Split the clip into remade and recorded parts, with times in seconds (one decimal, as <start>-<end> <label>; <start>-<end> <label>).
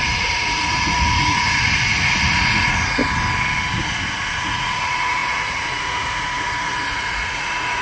0.0-3.0 remade; 3.0-4.3 recorded; 4.3-7.8 remade